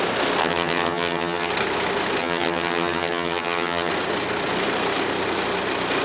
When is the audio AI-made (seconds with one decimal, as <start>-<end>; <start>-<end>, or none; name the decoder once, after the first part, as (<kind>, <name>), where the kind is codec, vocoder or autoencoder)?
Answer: 0.4-1.5 (vocoder, HiFi-GAN); 2.2-3.9